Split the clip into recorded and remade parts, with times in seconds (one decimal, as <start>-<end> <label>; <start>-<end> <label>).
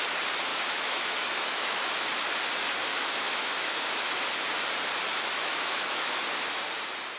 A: 0.0-0.5 recorded; 0.5-1.9 remade; 1.9-2.9 recorded; 2.9-4.1 remade; 4.1-5.3 recorded; 5.3-6.2 remade; 6.2-7.2 recorded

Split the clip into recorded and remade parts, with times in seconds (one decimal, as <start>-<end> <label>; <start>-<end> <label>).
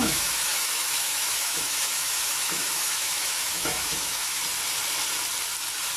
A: 0.0-4.4 remade; 4.4-6.0 recorded